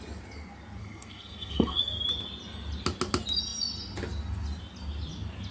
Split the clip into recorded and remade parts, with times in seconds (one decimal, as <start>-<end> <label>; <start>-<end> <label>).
0.0-0.8 recorded; 0.8-1.8 remade; 1.8-5.5 recorded